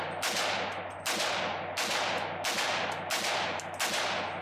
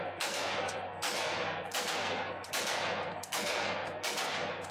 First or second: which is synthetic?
second